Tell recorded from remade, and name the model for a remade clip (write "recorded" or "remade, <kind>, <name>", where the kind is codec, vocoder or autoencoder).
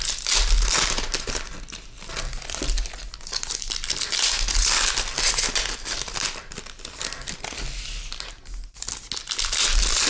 recorded